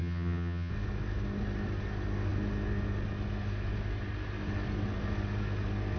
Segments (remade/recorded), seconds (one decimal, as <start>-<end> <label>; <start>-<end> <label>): 0.0-0.7 remade; 0.7-6.0 recorded